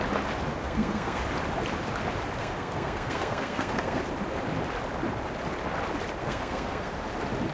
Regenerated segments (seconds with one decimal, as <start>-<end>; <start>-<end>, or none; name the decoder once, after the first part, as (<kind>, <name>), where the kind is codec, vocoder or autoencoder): 0.6-1.2 (codec, SNAC); 2.4-4.0; 6.2-6.9